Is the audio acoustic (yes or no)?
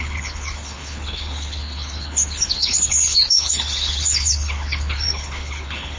no